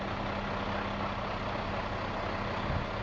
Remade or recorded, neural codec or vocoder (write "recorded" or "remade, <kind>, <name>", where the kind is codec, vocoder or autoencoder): recorded